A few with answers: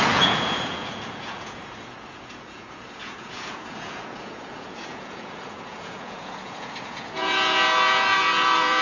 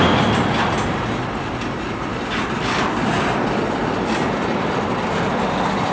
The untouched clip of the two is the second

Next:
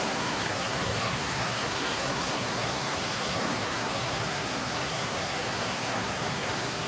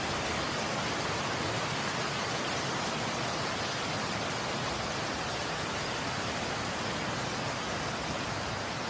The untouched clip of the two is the second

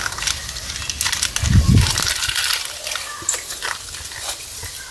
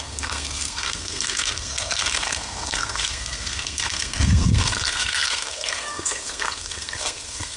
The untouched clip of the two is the first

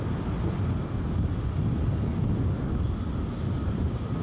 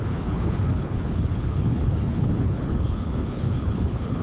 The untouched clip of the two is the first